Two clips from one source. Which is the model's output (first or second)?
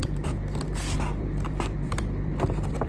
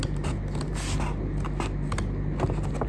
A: first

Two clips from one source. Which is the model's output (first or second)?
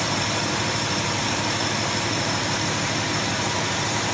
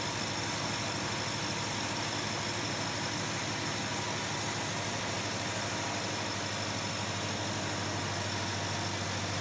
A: first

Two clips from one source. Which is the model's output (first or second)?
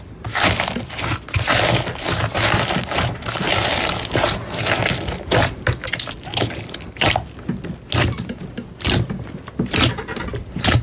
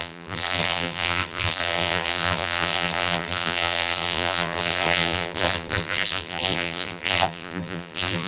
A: second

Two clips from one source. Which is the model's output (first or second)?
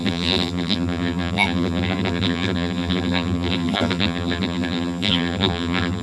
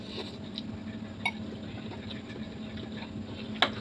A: first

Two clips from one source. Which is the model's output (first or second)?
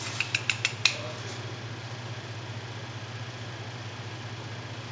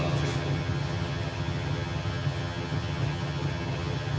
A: second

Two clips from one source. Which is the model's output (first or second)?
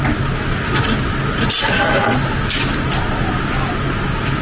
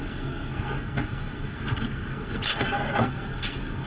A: second